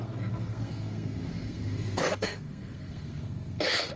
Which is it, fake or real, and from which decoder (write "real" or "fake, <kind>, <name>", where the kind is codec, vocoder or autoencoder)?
fake, codec, SNAC